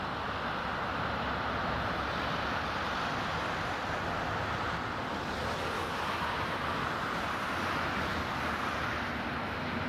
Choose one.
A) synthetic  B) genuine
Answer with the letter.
B